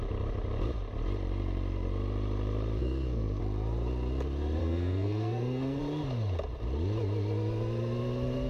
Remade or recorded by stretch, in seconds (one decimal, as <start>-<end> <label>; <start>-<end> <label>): 0.0-2.8 recorded; 2.8-3.4 remade; 3.4-4.6 recorded; 4.6-5.8 remade; 5.8-8.5 recorded